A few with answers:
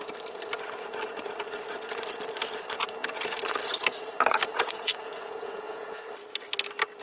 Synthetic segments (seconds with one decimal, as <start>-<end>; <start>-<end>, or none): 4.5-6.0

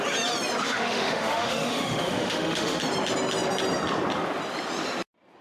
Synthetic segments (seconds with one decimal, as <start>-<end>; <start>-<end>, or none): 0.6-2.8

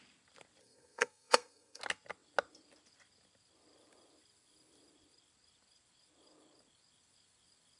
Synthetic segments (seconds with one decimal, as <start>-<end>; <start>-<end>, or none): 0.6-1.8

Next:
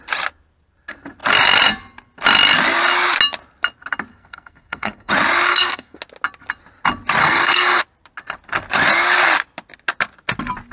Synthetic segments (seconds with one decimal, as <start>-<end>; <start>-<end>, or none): 4.1-5.1; 5.5-6.0; 7.2-7.8

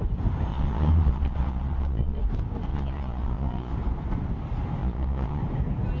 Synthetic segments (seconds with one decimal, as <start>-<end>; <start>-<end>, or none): 0.5-2.2; 2.7-3.7; 4.8-5.4

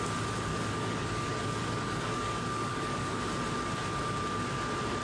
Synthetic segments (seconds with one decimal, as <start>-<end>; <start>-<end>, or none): 0.5-3.2

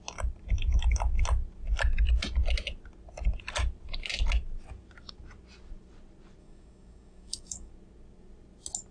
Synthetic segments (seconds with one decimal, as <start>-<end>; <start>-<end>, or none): 6.4-7.7